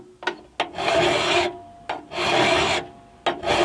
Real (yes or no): yes